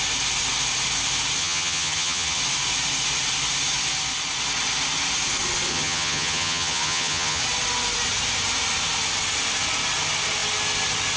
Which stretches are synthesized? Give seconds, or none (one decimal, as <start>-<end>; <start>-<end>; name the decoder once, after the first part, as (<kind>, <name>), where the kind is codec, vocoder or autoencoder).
1.4-2.4 (vocoder, HiFi-GAN); 5.7-7.4